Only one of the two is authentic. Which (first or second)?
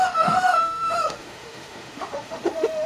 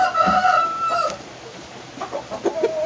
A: second